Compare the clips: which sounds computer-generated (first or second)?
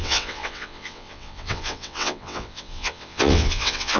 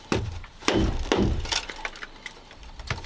first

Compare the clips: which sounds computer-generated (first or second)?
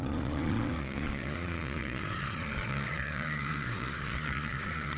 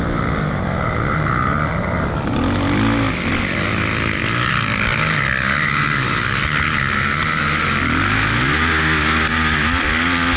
first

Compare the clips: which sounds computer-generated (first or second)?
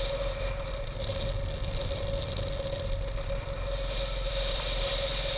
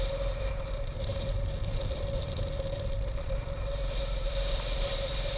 second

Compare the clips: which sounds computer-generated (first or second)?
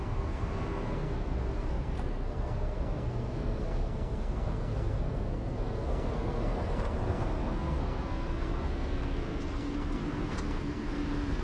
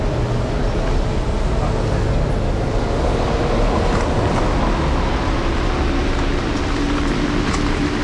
first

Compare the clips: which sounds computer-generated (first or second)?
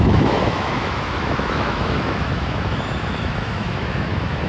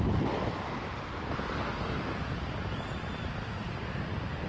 first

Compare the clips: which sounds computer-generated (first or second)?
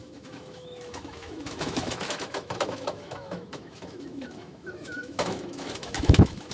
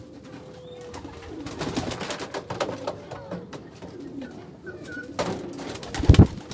first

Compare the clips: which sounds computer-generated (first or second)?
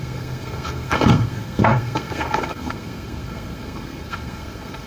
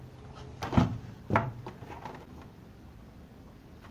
first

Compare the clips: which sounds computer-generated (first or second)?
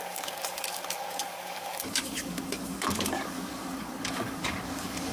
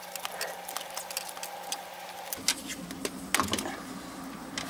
first